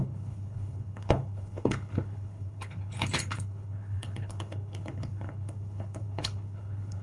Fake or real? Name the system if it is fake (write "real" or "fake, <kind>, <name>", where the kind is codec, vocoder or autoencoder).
fake, codec, HILCodec